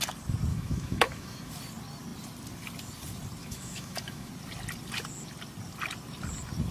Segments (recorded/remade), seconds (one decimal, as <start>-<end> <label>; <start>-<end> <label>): 0.0-0.5 recorded; 0.5-1.5 remade; 1.5-3.4 recorded; 3.4-4.3 remade; 4.3-6.7 recorded